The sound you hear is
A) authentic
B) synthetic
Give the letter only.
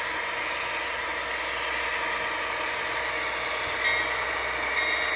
A